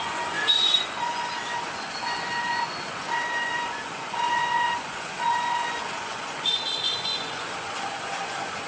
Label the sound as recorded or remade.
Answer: remade